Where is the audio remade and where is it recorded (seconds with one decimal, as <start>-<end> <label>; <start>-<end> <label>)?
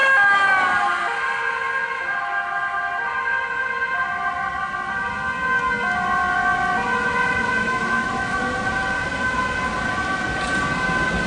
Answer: 0.0-7.6 recorded; 7.6-8.4 remade; 8.4-11.3 recorded